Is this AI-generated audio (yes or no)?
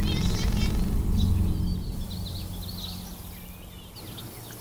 no